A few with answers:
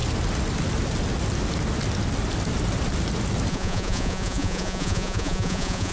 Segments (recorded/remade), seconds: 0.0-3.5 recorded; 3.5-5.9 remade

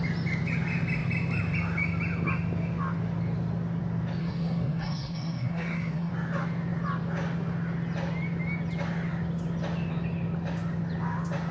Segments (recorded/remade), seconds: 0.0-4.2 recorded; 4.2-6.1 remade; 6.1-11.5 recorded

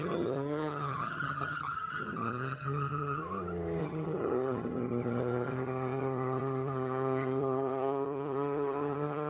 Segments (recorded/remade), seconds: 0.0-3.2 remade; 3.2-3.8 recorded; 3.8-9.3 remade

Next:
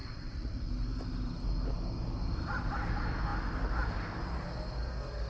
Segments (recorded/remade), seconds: 0.0-0.7 remade; 0.7-5.3 recorded

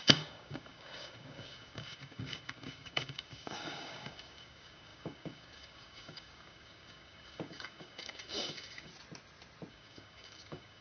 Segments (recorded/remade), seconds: 0.0-8.9 remade; 8.9-9.7 recorded; 9.7-10.8 remade

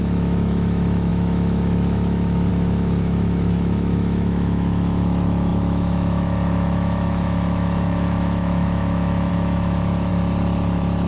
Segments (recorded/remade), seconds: 0.0-10.1 remade; 10.1-11.1 recorded